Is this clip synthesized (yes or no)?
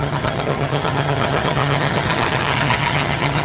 yes